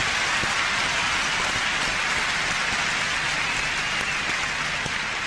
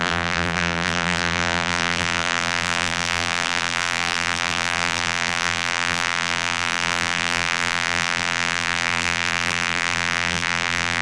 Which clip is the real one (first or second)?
first